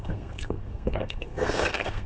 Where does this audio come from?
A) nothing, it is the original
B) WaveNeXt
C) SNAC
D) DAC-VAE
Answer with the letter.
C